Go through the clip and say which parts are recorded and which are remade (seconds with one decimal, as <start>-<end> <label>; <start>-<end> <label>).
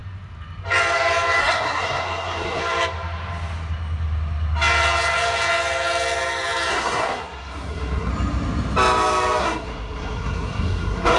0.0-1.4 recorded; 1.4-2.6 remade; 2.6-6.7 recorded; 6.7-8.1 remade; 8.1-9.4 recorded; 9.4-11.2 remade